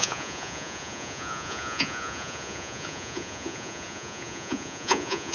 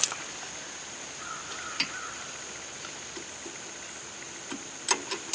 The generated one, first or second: first